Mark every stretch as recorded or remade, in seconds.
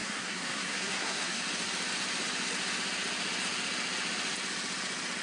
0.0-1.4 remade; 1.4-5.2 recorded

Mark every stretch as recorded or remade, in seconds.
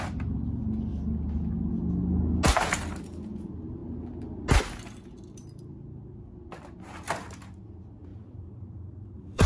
0.0-8.1 recorded; 8.1-9.5 remade